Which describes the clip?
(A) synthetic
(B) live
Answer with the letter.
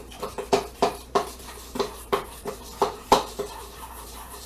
A